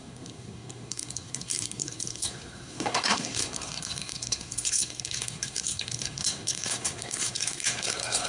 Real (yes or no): no